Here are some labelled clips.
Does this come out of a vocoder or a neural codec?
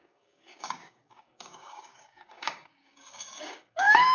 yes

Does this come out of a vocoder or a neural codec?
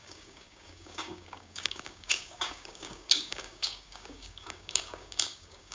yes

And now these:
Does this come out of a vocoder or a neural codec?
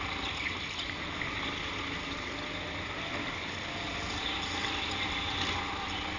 no